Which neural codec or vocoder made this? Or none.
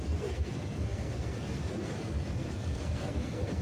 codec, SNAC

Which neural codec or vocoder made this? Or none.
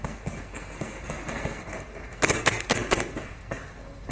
codec, SNAC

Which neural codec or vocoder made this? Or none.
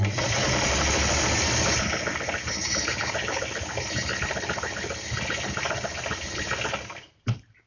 none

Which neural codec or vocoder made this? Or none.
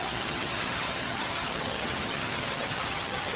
vocoder, HiFi-GAN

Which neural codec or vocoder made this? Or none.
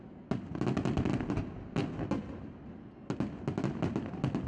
none